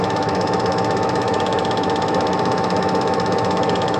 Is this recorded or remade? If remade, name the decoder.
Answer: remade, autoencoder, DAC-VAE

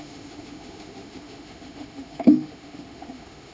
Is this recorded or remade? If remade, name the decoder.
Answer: remade, autoencoder, DAC-VAE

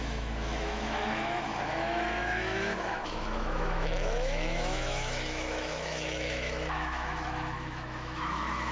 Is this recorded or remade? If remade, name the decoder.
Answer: remade, autoencoder, DAC-VAE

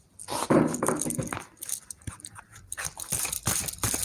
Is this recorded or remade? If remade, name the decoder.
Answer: recorded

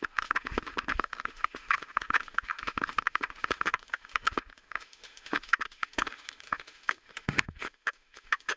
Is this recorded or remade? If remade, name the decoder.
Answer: remade, autoencoder, DAC-VAE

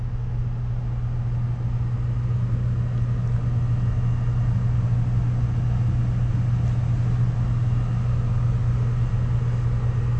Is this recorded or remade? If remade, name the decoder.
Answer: recorded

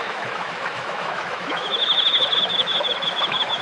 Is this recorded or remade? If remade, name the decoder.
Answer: remade, autoencoder, DAC-VAE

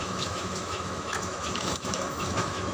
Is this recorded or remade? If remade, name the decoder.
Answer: remade, autoencoder, DAC-VAE